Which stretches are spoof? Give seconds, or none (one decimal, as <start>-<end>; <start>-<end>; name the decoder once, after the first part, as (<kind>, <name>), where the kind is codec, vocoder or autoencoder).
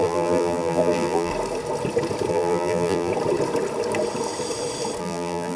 0.0-1.3 (vocoder, BigVGAN v2); 2.3-3.1; 5.0-5.6